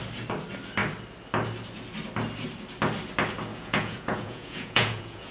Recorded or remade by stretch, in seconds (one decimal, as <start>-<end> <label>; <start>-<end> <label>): 0.0-3.5 recorded; 3.5-5.3 remade